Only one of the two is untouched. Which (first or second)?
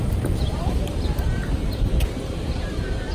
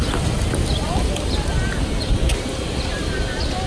second